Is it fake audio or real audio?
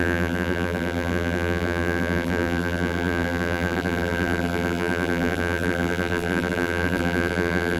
fake